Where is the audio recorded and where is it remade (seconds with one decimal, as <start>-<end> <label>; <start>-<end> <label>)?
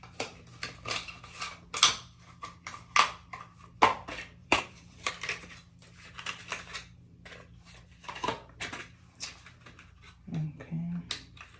0.0-4.4 recorded; 4.4-5.1 remade; 5.1-11.6 recorded